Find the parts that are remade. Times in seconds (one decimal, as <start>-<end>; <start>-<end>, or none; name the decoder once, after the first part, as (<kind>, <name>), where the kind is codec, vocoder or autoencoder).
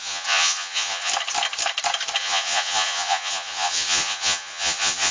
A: 0.0-1.1 (vocoder, Vocos); 2.2-5.1